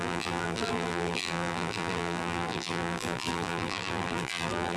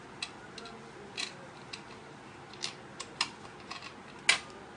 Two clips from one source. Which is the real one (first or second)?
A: second